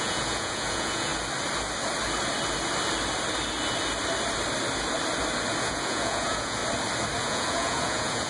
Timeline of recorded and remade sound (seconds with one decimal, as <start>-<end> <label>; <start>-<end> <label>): 0.0-1.1 remade; 1.1-5.6 recorded; 5.6-6.6 remade; 6.6-7.2 recorded; 7.2-8.3 remade